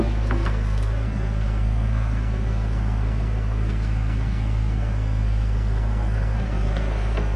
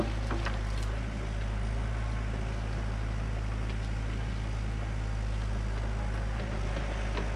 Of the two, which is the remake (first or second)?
first